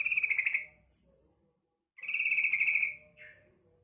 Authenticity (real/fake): real